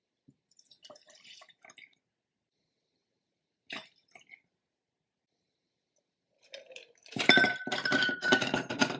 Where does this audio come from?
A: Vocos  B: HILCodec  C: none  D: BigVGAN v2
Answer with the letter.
D